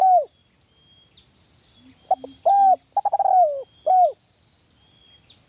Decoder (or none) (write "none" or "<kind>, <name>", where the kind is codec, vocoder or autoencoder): none